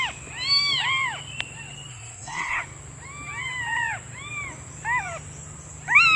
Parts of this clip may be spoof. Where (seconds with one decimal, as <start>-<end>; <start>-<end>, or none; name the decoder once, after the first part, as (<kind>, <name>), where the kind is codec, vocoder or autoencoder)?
1.9-2.6 (codec, SNAC)